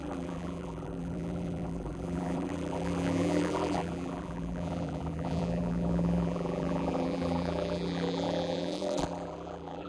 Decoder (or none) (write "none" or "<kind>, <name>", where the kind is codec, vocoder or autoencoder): vocoder, BigVGAN v2